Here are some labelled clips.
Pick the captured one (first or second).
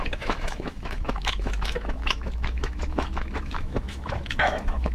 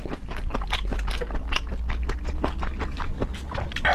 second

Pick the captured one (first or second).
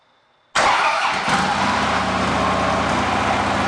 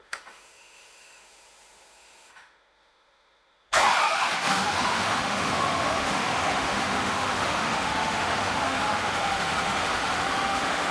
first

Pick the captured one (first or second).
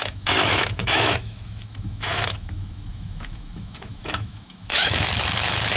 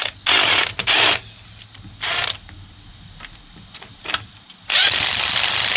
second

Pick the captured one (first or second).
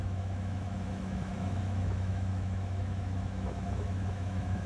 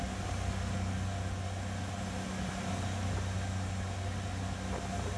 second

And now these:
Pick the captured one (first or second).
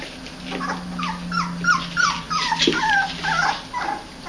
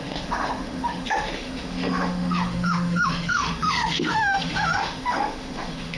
first